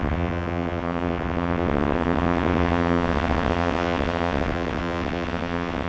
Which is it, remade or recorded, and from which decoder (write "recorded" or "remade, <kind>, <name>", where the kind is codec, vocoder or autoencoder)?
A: remade, vocoder, WaveNeXt